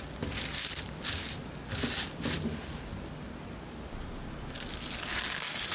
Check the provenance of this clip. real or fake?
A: real